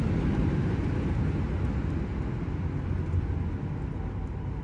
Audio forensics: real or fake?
real